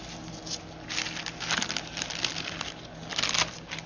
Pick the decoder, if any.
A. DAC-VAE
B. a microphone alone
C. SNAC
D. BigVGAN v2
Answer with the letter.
B